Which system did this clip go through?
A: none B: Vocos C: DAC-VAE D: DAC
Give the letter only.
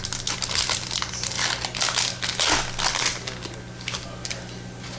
A